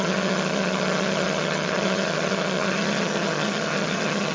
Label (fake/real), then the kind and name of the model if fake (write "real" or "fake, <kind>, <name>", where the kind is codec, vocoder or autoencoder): fake, vocoder, HiFi-GAN